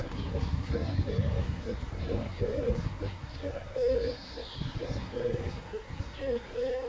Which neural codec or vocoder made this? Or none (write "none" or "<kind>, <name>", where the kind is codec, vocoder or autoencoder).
codec, SNAC